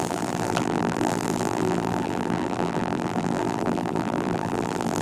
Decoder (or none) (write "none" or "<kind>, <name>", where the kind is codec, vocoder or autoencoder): vocoder, BigVGAN v2